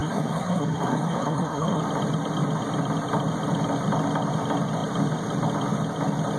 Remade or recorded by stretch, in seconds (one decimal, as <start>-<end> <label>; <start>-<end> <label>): 0.0-1.8 remade; 1.8-6.4 recorded